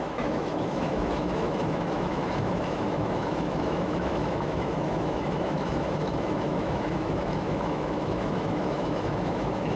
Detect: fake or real fake